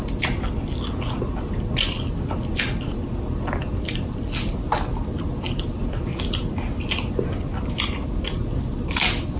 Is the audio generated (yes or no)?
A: no